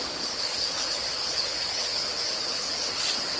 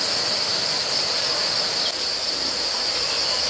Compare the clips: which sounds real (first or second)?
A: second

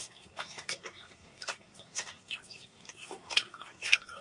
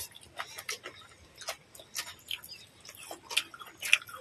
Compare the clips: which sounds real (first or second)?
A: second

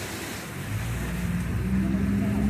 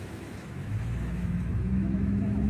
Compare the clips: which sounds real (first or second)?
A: first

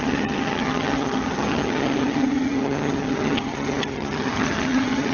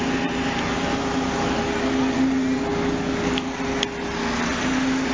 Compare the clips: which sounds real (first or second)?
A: second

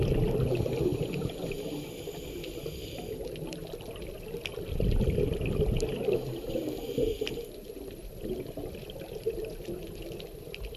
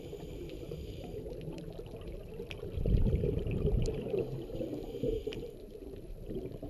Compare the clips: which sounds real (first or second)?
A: first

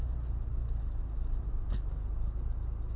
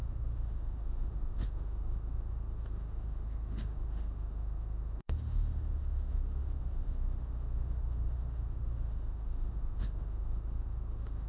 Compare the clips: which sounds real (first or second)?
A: first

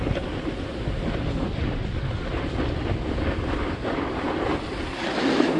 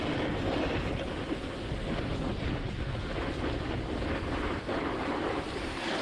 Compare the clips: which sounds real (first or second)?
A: second